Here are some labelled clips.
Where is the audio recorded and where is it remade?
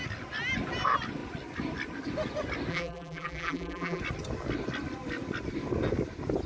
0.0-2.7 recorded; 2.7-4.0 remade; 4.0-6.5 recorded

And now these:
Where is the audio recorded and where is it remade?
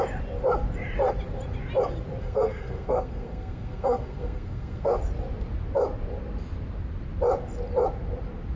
0.0-2.2 recorded; 2.2-5.0 remade; 5.0-8.6 recorded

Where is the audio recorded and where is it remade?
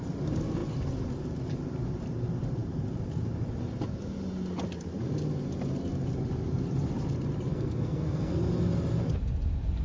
0.0-7.5 recorded; 7.5-8.5 remade; 8.5-9.8 recorded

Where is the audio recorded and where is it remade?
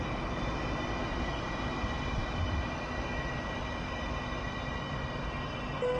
0.0-6.0 recorded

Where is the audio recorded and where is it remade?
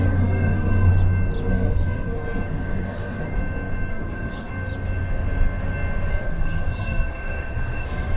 0.0-0.9 remade; 0.9-1.5 recorded; 1.5-3.4 remade; 3.4-3.9 recorded; 3.9-4.5 remade; 4.5-6.1 recorded; 6.1-8.2 remade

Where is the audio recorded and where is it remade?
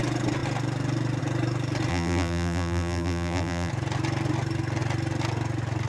0.0-1.9 recorded; 1.9-3.7 remade; 3.7-5.9 recorded